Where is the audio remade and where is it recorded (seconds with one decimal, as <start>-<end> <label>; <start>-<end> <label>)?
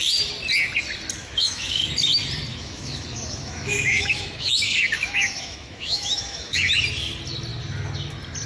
0.0-1.2 recorded; 1.2-1.9 remade; 1.9-2.5 recorded; 2.5-6.7 remade; 6.7-8.5 recorded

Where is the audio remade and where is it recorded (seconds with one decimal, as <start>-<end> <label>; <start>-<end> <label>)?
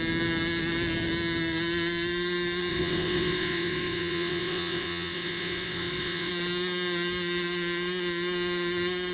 0.0-2.7 recorded; 2.7-6.3 remade; 6.3-9.1 recorded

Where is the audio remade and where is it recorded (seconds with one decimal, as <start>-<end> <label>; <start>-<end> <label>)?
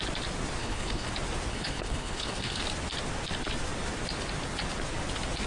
0.0-0.6 recorded; 0.6-1.1 remade; 1.1-1.5 recorded; 1.5-2.6 remade; 2.6-5.5 recorded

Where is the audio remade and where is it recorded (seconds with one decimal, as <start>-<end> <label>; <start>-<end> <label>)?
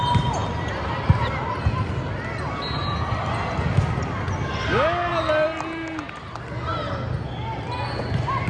0.0-8.5 recorded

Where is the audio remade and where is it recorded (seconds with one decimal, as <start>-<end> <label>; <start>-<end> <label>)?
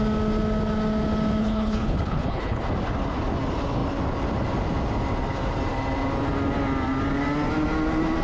0.0-1.4 recorded; 1.4-2.6 remade; 2.6-8.2 recorded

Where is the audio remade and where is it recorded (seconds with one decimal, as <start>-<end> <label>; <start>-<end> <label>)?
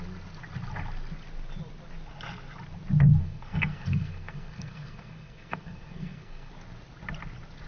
0.0-3.2 recorded; 3.2-6.5 remade; 6.5-7.7 recorded